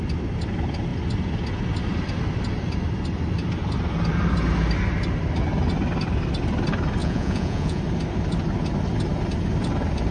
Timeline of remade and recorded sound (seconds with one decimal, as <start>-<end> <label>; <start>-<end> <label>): 0.0-7.0 recorded; 7.0-7.8 remade; 7.8-10.1 recorded